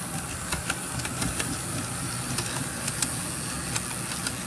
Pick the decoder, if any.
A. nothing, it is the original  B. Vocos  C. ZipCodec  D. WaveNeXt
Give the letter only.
A